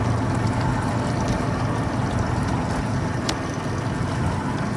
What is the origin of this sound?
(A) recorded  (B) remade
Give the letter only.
A